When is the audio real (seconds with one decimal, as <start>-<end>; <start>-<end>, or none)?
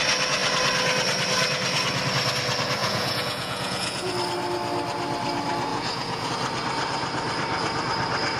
0.0-2.8; 4.1-5.7; 6.3-8.4